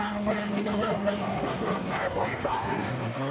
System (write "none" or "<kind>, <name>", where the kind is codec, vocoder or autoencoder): codec, SNAC